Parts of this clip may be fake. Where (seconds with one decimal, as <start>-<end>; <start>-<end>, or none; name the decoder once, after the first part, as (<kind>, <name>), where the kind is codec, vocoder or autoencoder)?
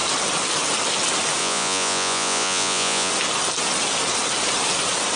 1.4-3.1 (vocoder, Vocos)